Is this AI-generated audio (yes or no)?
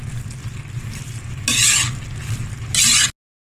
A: no